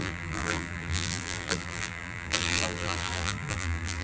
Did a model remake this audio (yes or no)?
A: yes